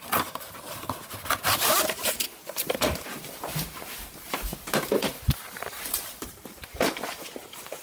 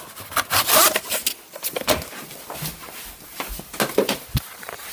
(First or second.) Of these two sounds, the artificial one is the first